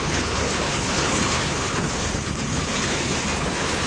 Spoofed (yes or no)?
yes